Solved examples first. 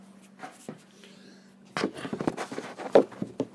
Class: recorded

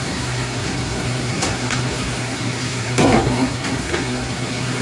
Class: remade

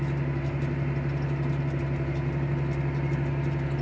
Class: recorded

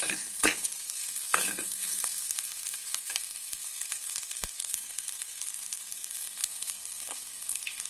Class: remade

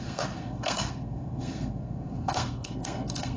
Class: remade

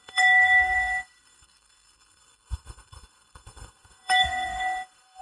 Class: remade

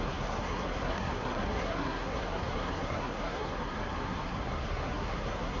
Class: remade